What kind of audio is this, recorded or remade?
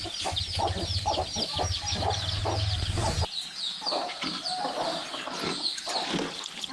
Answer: recorded